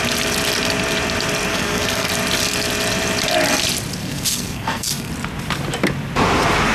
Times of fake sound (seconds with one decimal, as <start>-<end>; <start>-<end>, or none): 1.5-2.1; 4.0-5.1